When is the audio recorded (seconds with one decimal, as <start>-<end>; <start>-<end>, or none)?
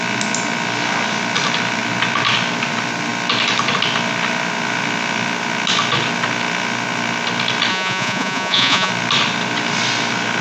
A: 0.0-7.7; 8.9-10.4